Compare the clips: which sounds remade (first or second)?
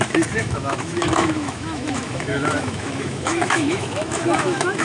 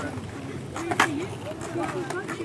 first